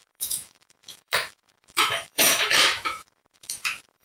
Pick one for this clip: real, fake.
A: fake